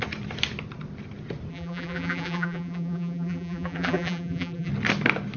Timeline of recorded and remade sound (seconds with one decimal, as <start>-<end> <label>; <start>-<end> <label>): 0.0-1.5 recorded; 1.5-4.7 remade; 4.7-5.4 recorded